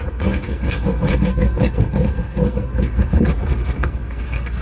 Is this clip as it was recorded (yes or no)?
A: no